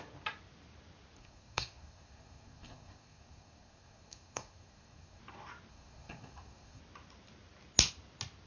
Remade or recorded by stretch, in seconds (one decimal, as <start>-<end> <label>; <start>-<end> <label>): 0.0-1.2 recorded; 1.2-5.2 remade; 5.2-5.7 recorded; 5.7-6.8 remade; 6.8-8.5 recorded